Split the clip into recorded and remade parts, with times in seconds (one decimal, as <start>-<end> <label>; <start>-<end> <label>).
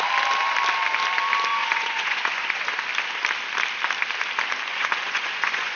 0.0-1.6 recorded; 1.6-2.9 remade; 2.9-4.7 recorded; 4.7-5.8 remade